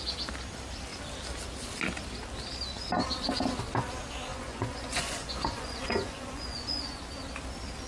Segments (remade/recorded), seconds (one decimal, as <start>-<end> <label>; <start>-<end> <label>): 0.0-4.3 recorded; 4.3-7.0 remade; 7.0-7.9 recorded